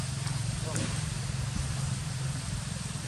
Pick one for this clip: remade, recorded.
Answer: recorded